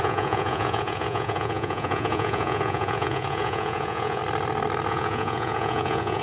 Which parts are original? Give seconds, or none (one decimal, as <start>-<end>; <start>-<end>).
4.2-4.9